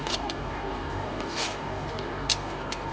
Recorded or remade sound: remade